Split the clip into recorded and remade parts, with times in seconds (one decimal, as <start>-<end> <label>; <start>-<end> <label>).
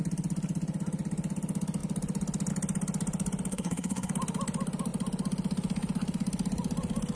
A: 0.0-3.5 recorded; 3.5-4.1 remade; 4.1-7.2 recorded